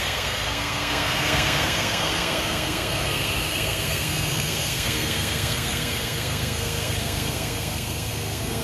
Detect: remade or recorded remade